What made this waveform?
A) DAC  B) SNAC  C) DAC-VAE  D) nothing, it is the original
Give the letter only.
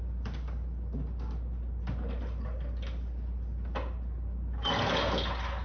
D